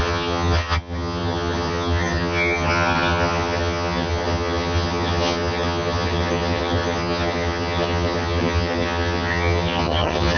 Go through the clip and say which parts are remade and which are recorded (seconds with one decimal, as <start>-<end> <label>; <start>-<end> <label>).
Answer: 0.0-10.4 remade